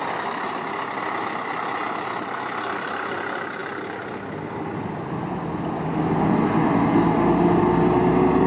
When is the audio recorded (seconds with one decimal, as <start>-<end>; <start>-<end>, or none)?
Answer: 0.0-8.5